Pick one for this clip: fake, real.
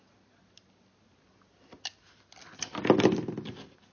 real